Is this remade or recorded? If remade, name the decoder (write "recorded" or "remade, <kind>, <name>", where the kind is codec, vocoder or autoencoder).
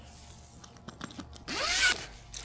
recorded